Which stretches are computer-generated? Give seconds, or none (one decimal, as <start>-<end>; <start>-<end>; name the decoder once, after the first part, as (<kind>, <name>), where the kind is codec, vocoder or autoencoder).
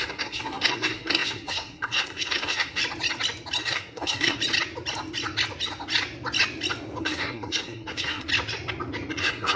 0.0-2.8 (codec, SNAC); 3.6-4.4; 7.0-8.3; 9.1-9.6